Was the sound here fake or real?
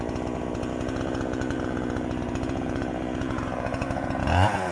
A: fake